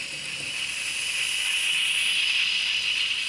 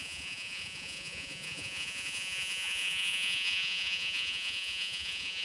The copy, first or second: second